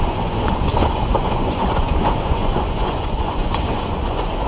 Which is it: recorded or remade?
remade